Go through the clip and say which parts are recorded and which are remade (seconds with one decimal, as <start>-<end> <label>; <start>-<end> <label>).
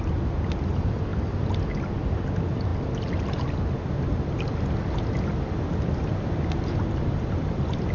0.0-7.9 recorded